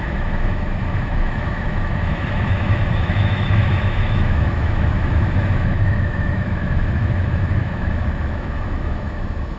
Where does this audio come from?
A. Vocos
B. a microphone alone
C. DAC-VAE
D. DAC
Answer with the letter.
C